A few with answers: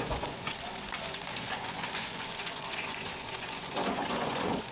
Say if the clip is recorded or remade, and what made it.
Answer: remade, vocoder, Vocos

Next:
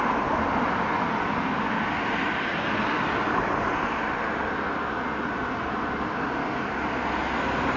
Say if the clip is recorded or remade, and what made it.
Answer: recorded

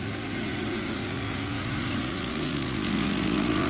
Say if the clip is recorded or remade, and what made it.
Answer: remade, vocoder, Vocos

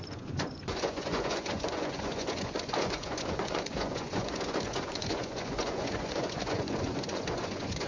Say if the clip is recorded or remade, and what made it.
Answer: remade, vocoder, Vocos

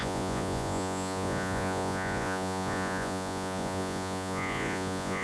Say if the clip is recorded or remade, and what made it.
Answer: remade, vocoder, Vocos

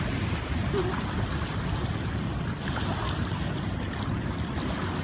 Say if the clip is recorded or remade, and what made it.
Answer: recorded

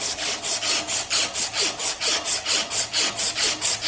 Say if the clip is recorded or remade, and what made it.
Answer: recorded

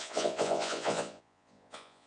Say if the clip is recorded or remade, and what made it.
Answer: remade, vocoder, Vocos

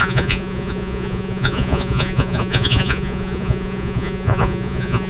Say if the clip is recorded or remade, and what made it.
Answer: remade, vocoder, Vocos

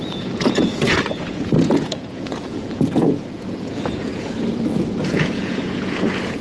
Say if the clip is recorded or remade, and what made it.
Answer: remade, vocoder, Vocos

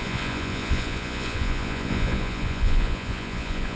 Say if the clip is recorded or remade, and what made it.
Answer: remade, vocoder, Vocos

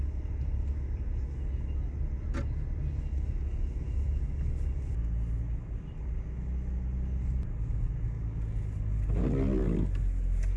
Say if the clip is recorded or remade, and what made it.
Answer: recorded